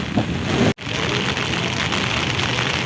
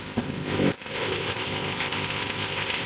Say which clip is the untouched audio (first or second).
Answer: first